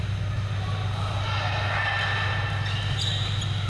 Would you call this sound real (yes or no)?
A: yes